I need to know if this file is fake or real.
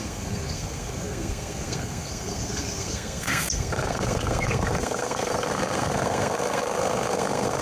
fake